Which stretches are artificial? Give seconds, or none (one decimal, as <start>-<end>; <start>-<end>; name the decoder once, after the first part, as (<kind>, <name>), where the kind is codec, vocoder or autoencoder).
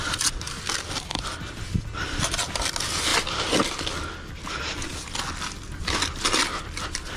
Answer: none